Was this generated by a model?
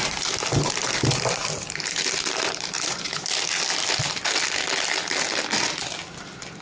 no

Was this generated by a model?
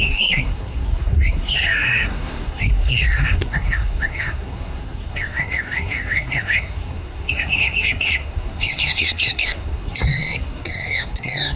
yes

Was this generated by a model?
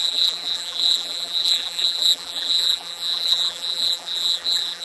yes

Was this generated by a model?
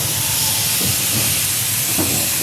yes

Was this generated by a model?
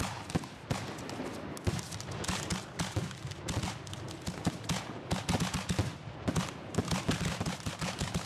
no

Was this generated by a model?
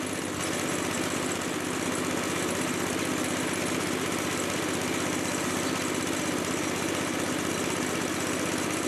no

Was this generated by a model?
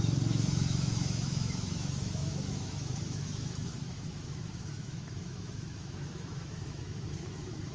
yes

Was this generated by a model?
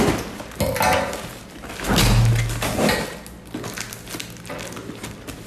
no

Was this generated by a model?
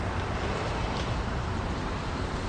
yes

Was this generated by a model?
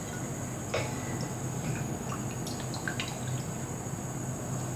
no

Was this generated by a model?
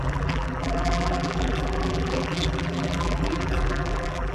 yes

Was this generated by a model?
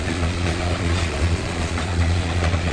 yes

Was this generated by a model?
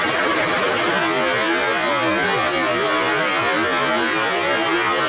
no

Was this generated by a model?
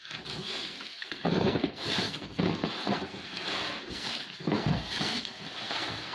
yes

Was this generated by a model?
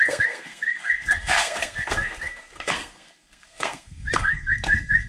yes